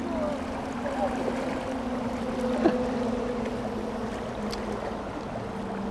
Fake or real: real